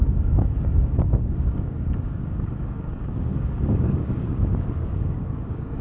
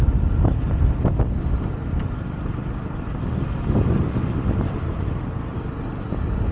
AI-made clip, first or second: first